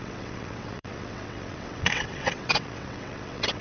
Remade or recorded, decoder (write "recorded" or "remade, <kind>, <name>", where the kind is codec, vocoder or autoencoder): remade, vocoder, WaveNeXt